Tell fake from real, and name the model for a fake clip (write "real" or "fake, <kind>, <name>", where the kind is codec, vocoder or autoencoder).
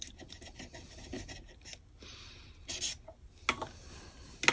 real